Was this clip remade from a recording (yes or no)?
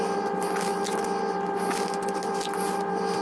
no